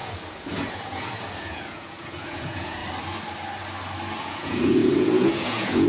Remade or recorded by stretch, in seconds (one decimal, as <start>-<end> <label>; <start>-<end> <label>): 0.0-2.8 remade; 2.8-4.2 recorded; 4.2-5.9 remade

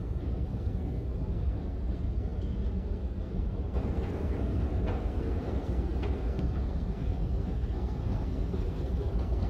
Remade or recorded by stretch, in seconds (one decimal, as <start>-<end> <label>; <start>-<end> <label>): 0.0-9.5 remade

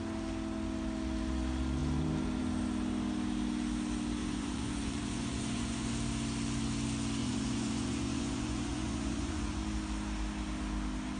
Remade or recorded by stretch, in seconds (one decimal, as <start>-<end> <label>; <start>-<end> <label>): 0.0-4.2 recorded; 4.2-5.9 remade; 5.9-7.2 recorded; 7.2-9.6 remade; 9.6-11.2 recorded

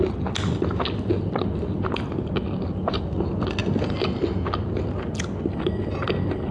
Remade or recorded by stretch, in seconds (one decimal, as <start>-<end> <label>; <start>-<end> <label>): 0.0-6.5 recorded

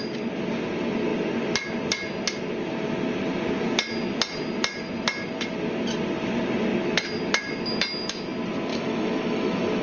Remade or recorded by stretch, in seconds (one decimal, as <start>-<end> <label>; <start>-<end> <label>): 0.0-8.7 recorded; 8.7-9.8 remade

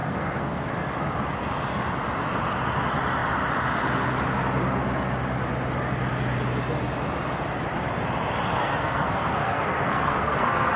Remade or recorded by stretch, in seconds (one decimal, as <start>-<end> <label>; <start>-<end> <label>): 0.0-0.7 remade; 0.7-8.6 recorded; 8.6-10.8 remade

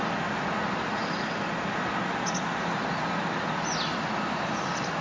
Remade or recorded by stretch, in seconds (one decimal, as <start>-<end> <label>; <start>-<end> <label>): 0.0-5.0 recorded